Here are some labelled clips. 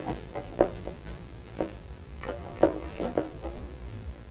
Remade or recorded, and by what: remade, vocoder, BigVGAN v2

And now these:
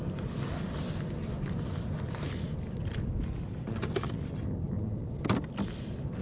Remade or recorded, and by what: recorded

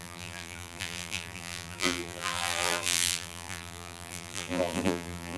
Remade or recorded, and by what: remade, vocoder, BigVGAN v2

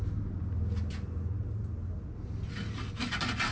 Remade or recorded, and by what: recorded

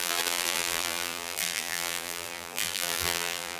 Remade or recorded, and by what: remade, vocoder, BigVGAN v2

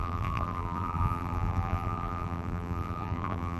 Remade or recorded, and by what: remade, vocoder, BigVGAN v2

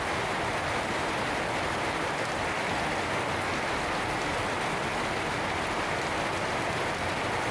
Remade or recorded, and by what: recorded